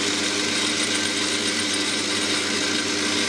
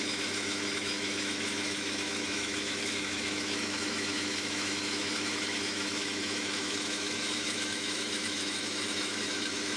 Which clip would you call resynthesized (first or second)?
second